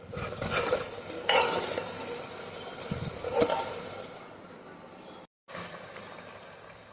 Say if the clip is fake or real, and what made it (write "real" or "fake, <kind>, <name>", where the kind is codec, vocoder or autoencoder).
fake, vocoder, BigVGAN v2